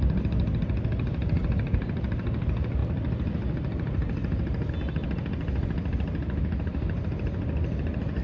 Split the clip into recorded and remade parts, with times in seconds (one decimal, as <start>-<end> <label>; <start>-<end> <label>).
0.0-8.2 recorded